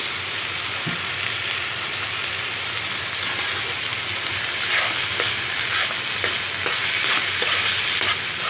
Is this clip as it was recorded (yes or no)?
yes